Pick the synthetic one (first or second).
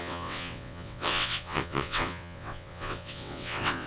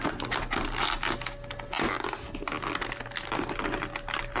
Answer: first